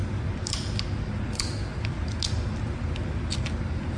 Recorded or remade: recorded